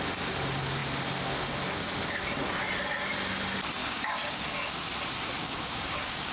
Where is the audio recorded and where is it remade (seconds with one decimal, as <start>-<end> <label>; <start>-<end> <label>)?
0.0-3.8 recorded; 3.8-4.4 remade; 4.4-5.4 recorded; 5.4-6.3 remade